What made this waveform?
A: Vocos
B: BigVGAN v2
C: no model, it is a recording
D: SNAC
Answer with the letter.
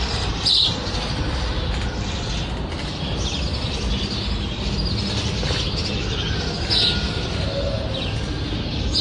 C